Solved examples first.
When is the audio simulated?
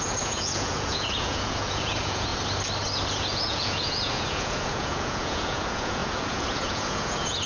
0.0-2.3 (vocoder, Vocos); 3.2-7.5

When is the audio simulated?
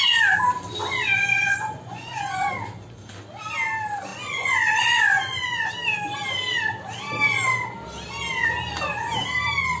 1.3-2.5 (vocoder, Vocos); 4.1-5.7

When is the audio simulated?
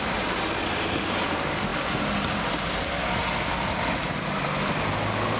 none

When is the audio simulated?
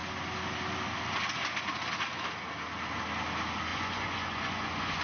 3.7-5.0 (vocoder, Vocos)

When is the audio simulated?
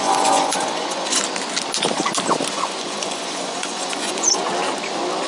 0.0-1.2 (vocoder, Vocos); 2.5-4.4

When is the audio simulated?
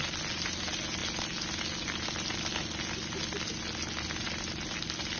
none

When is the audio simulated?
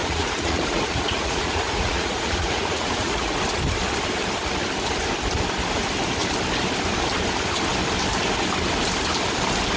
0.0-3.4 (vocoder, Vocos)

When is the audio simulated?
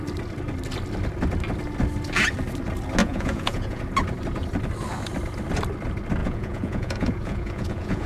3.0-3.8 (vocoder, Vocos); 6.2-8.1